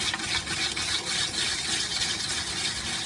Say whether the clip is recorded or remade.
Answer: recorded